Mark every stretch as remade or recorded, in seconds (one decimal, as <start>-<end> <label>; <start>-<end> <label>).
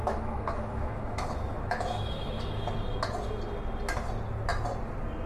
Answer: 0.0-2.6 remade; 2.6-5.3 recorded